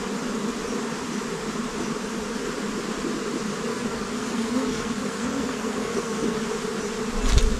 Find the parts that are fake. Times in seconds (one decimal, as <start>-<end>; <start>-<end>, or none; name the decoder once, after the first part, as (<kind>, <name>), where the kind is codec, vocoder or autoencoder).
3.7-6.4 (codec, SNAC)